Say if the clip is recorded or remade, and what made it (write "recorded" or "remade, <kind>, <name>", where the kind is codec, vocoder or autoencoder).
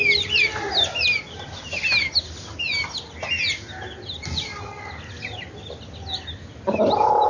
recorded